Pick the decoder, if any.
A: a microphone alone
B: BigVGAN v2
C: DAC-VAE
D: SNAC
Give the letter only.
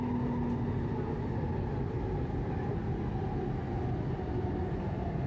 A